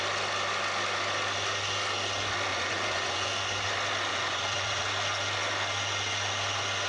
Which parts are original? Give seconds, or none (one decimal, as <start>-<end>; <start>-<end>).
0.0-2.5; 3.3-4.1; 4.8-6.9

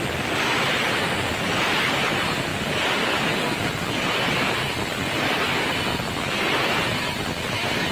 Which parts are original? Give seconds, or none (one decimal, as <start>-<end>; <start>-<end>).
0.0-7.9

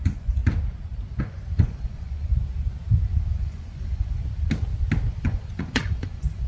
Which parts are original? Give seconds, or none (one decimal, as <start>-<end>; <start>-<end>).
0.4-1.2; 2.3-3.3; 4.2-5.1

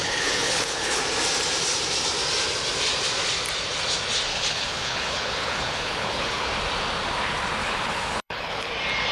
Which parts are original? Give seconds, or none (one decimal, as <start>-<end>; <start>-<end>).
1.0-4.3; 6.5-7.6; 8.7-9.1

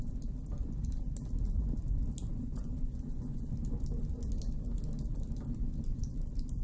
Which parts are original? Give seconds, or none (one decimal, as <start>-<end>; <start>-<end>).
0.0-2.3; 3.4-6.6

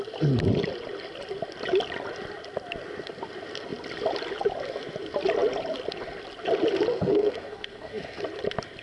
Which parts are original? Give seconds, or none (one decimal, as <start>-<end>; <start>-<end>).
0.0-6.9; 8.2-8.8

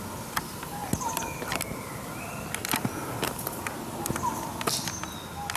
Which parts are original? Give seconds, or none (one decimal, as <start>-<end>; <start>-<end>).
0.0-5.6

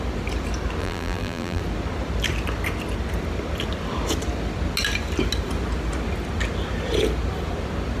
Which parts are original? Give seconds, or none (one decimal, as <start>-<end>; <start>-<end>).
0.0-0.8; 1.6-8.0